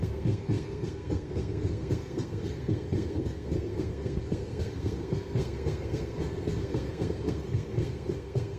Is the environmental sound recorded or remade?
remade